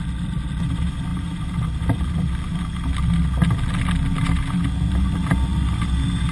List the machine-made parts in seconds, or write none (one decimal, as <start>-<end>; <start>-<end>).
none